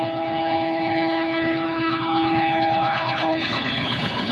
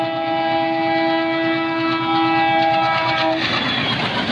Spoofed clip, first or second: first